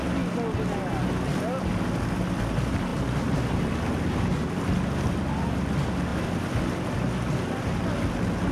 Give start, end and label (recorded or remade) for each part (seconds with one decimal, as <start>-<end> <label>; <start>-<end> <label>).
0.0-8.5 recorded